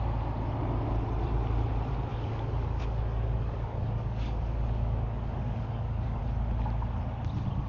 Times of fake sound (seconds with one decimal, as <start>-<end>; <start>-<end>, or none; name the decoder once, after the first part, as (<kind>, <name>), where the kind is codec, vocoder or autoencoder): 2.1-6.2 (codec, DAC)